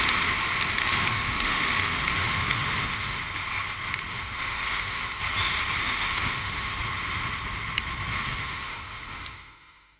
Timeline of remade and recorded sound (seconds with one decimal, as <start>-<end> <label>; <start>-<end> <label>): 0.0-0.8 recorded; 0.8-3.2 remade; 3.2-4.1 recorded; 4.1-5.2 remade; 5.2-5.8 recorded; 5.8-6.8 remade; 6.8-8.3 recorded; 8.3-10.0 remade